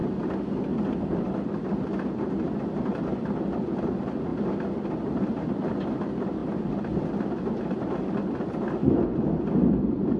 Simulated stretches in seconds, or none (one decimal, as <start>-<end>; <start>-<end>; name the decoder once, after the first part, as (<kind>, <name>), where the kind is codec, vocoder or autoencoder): none